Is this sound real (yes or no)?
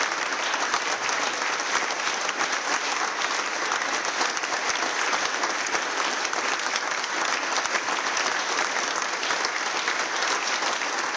yes